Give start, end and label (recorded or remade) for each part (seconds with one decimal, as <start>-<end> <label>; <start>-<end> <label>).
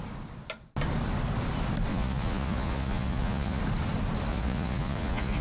0.0-1.9 recorded; 1.9-3.6 remade; 3.6-4.3 recorded; 4.3-5.4 remade